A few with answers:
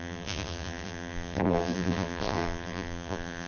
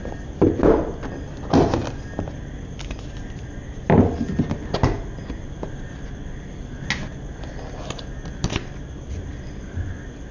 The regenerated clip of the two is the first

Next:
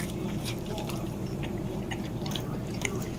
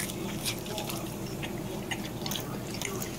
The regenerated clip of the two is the first